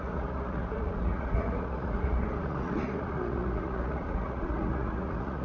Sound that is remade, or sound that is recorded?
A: remade